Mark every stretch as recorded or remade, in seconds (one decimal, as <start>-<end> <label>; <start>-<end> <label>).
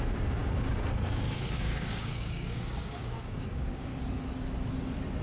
0.0-3.9 remade; 3.9-5.2 recorded